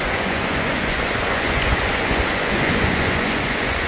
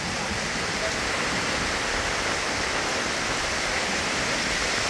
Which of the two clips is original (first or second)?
second